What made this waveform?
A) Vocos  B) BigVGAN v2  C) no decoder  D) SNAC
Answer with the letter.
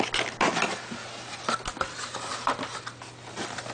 C